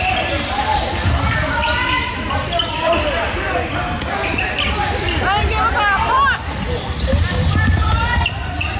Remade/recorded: recorded